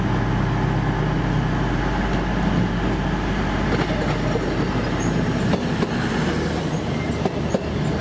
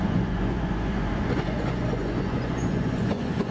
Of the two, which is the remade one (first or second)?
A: second